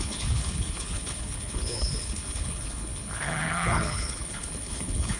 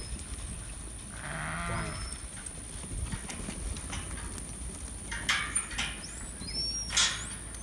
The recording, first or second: second